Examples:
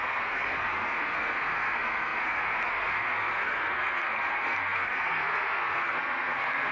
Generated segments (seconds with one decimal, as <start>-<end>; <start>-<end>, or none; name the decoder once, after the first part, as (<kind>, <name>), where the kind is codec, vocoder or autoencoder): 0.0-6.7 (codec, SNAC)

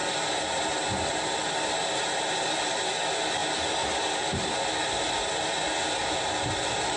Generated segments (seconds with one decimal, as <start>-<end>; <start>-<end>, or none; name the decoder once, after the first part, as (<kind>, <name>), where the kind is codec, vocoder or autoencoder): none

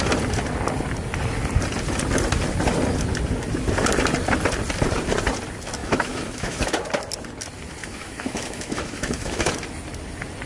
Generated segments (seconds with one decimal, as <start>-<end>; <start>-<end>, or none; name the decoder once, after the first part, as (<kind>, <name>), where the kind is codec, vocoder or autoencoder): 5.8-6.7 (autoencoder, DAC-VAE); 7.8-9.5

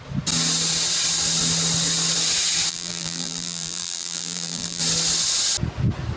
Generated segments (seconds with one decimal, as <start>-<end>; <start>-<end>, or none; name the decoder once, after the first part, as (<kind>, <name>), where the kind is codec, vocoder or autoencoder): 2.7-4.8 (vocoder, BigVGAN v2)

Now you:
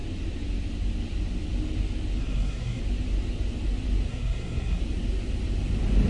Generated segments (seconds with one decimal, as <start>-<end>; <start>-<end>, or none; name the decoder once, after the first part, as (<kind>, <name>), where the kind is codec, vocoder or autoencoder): 2.2-2.8 (codec, SNAC); 4.1-4.8

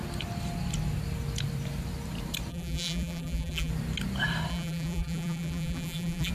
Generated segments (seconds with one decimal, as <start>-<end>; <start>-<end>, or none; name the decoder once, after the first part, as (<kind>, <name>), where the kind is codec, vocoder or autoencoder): 2.5-3.7 (vocoder, BigVGAN v2); 4.5-6.3

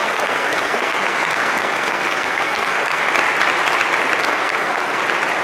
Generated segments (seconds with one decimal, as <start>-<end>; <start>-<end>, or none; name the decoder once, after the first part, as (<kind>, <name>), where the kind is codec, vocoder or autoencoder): 0.0-3.0 (codec, SNAC); 4.2-5.0

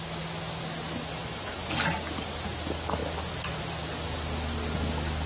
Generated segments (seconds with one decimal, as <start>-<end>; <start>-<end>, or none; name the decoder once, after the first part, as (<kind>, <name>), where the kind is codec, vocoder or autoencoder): 1.0-1.6 (autoencoder, DAC-VAE)